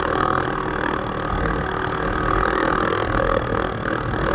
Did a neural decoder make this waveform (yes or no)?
yes